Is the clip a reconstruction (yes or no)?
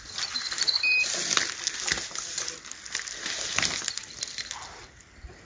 no